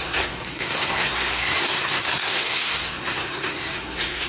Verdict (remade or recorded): remade